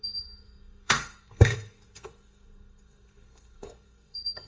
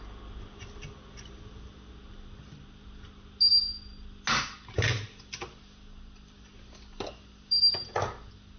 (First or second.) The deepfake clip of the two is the first